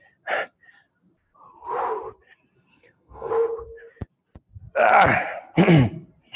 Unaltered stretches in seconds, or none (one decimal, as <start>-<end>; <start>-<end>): 0.0-2.7; 3.3-6.4